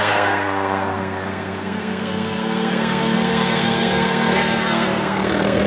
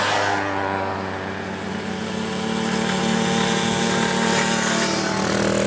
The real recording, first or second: second